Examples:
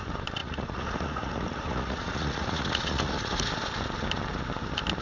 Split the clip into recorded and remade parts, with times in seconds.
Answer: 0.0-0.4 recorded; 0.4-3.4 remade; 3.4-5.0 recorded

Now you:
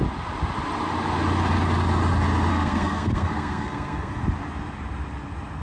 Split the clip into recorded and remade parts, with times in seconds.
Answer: 0.0-2.5 recorded; 2.5-4.1 remade; 4.1-5.6 recorded